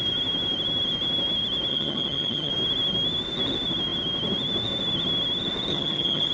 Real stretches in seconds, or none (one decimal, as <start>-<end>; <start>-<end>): 0.0-1.7; 2.5-5.7